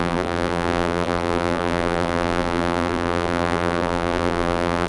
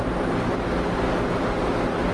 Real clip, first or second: second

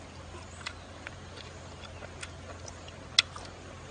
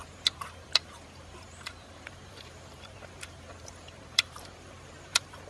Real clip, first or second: first